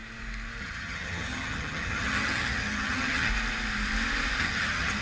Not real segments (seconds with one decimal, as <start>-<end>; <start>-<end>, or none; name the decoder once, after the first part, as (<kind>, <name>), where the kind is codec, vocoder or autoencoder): 0.6-3.3 (vocoder, HiFi-GAN); 4.4-5.0